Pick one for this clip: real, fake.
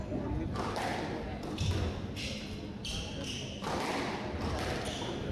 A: real